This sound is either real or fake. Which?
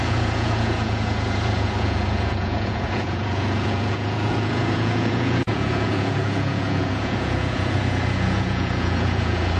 fake